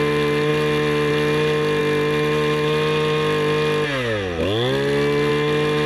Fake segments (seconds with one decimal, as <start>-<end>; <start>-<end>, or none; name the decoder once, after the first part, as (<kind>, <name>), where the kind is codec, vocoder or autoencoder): none